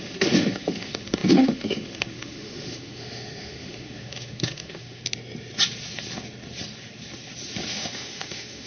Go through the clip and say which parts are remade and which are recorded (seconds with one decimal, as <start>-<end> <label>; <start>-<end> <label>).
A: 0.0-5.0 remade; 5.0-7.7 recorded; 7.7-8.7 remade